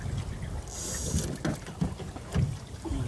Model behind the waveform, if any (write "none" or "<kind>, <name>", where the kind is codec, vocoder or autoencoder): none